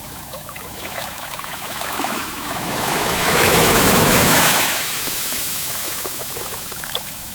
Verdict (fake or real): fake